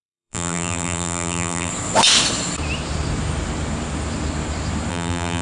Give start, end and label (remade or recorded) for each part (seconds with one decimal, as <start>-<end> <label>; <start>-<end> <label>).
0.0-1.7 remade; 1.7-4.9 recorded; 4.9-5.4 remade